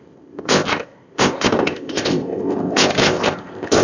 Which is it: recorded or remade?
remade